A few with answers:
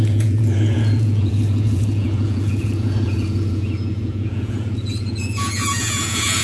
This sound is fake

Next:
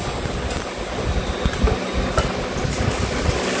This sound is real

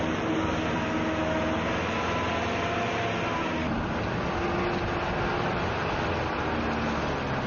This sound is real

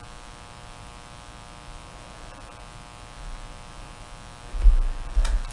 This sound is real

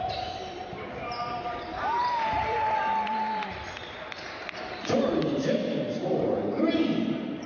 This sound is fake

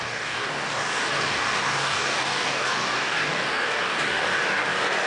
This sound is fake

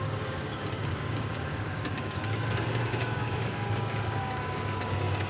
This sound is fake